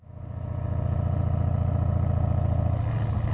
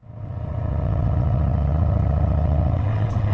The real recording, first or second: first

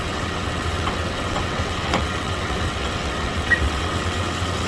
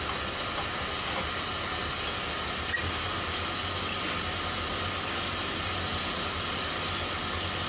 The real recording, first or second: second